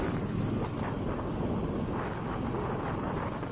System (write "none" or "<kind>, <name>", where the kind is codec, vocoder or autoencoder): none